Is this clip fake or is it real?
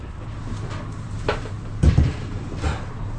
fake